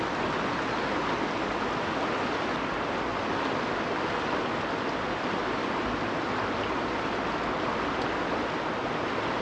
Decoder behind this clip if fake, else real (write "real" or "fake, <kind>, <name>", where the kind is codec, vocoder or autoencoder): real